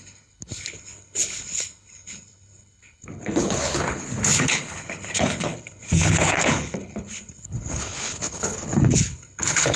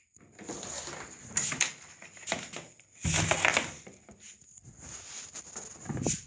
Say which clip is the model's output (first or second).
first